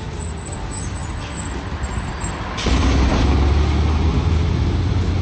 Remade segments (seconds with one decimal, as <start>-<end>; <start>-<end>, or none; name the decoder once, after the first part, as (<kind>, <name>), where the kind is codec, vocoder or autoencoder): none